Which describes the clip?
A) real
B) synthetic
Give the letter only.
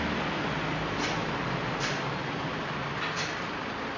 A